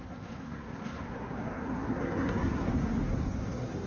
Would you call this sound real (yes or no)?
no